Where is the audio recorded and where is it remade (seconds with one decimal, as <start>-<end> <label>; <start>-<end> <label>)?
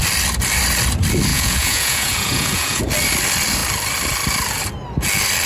0.0-1.3 recorded; 1.3-2.8 remade; 2.8-5.5 recorded